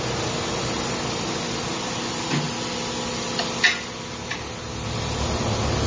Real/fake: real